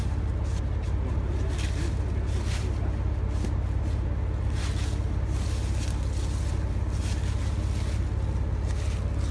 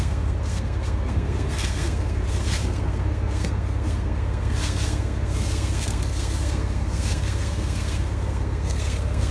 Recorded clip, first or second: first